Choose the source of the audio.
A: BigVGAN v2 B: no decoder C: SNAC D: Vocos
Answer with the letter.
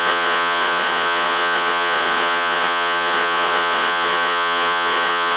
D